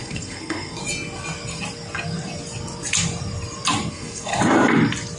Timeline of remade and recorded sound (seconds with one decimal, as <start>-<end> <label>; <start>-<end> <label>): 0.0-0.8 remade; 0.8-3.9 recorded; 3.9-4.3 remade; 4.3-5.2 recorded